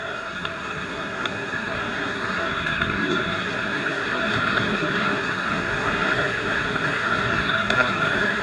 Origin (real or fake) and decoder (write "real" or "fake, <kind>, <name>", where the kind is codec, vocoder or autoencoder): fake, codec, SNAC